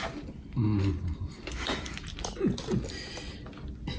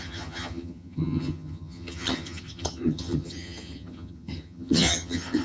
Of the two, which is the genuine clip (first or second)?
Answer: first